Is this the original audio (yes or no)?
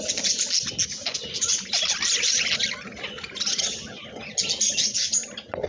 yes